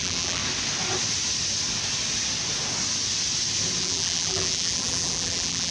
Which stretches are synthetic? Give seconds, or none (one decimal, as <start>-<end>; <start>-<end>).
0.0-0.4; 3.8-5.7